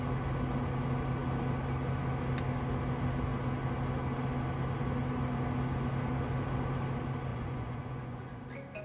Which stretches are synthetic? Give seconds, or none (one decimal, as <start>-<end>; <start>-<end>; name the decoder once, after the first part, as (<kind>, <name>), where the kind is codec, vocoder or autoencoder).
7.3-8.4 (vocoder, Vocos)